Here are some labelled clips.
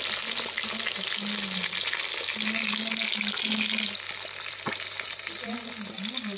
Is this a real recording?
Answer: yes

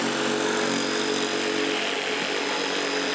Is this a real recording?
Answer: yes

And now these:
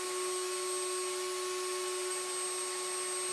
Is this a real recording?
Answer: yes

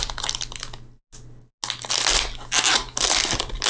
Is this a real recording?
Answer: yes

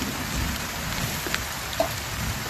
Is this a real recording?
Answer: yes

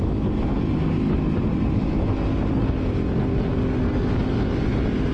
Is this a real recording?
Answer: yes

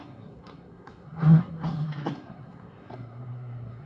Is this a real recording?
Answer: no